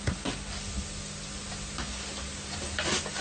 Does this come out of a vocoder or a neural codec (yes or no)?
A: no